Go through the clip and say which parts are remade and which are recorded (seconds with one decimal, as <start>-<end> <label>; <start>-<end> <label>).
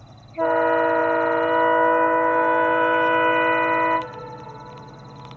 0.0-5.4 recorded